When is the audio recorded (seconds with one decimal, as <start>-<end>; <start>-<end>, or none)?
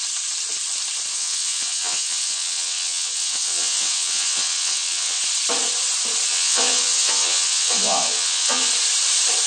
0.0-1.1; 5.2-6.3; 8.7-9.5